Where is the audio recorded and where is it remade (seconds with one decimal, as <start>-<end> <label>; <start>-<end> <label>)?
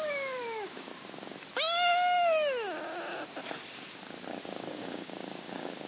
0.0-0.9 remade; 0.9-4.4 recorded; 4.4-5.9 remade